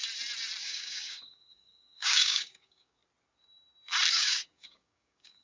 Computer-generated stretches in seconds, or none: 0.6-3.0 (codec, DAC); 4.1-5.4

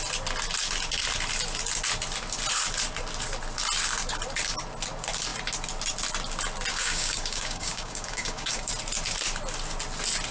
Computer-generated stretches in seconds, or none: 6.7-8.7 (codec, DAC)

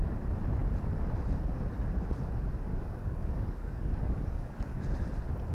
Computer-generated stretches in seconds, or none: 2.7-4.8 (codec, DAC)

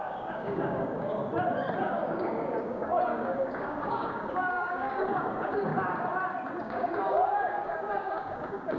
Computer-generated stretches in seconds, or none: 0.0-1.2 (codec, DAC); 1.8-5.7; 6.6-8.8

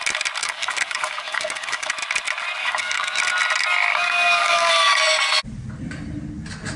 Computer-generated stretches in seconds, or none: 0.4-1.9 (codec, DAC); 2.6-3.2; 3.9-4.7

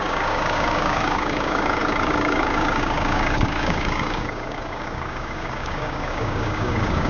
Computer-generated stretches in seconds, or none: 0.0-7.1 (codec, DAC)

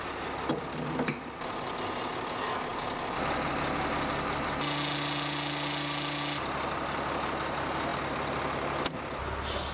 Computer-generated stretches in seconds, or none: none